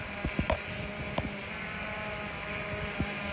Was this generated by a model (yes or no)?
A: no